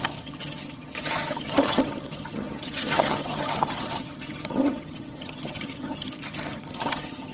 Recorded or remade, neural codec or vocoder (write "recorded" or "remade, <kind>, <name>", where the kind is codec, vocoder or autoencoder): remade, vocoder, HiFi-GAN